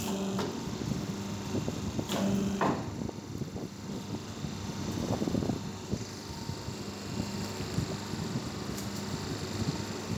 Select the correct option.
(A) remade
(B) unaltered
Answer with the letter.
B